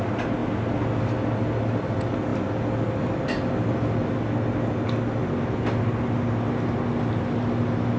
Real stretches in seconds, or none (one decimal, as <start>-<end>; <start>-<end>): 0.0-8.0